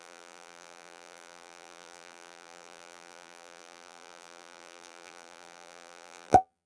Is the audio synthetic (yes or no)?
yes